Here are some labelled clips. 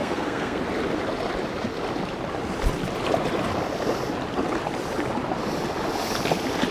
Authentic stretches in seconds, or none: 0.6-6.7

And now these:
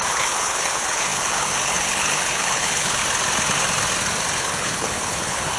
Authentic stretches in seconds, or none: 3.0-4.4

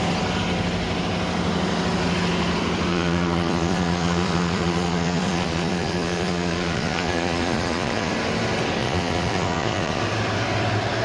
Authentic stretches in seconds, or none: 0.0-2.9; 8.1-8.8; 10.0-11.0

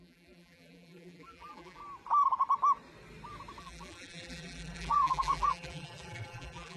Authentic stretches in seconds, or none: 1.8-3.6

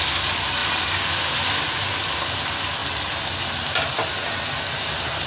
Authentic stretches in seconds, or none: 0.0-5.3

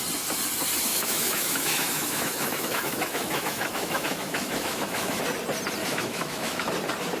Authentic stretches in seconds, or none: 0.0-0.9; 5.2-5.8; 6.7-7.2

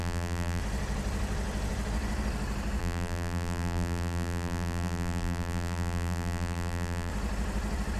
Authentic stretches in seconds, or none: 0.6-2.8; 7.1-8.0